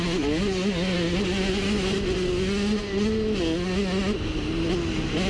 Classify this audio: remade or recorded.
recorded